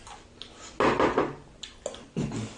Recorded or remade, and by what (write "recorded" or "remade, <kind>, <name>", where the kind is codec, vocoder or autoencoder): recorded